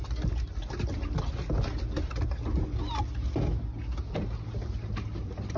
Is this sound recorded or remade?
recorded